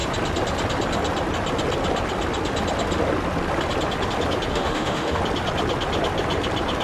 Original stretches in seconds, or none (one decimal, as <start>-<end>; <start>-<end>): 0.0-4.5; 5.2-6.8